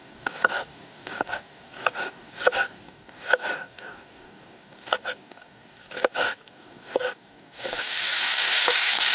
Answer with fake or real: fake